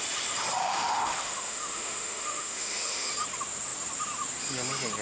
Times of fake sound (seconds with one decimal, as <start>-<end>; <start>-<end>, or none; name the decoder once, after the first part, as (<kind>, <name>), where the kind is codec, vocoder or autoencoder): 0.6-3.1 (autoencoder, DAC-VAE)